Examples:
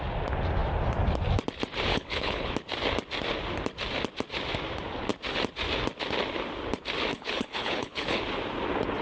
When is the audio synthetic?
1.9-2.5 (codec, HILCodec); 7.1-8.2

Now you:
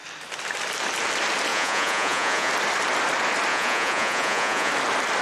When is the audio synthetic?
1.5-2.5 (vocoder, Vocos); 3.5-4.7

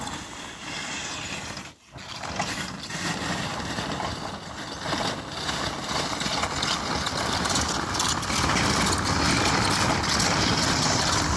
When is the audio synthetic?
3.5-4.2 (vocoder, BigVGAN v2)

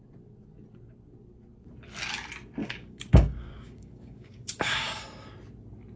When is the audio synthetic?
2.6-5.0 (codec, DAC)